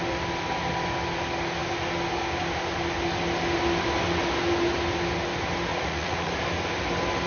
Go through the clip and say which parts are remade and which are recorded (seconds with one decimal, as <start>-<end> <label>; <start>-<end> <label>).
0.0-5.7 recorded; 5.7-6.3 remade; 6.3-7.3 recorded